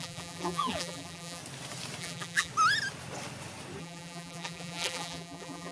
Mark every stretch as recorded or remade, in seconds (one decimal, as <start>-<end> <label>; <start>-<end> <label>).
0.0-1.4 remade; 1.4-2.0 recorded; 2.0-2.5 remade; 2.5-3.8 recorded; 3.8-5.7 remade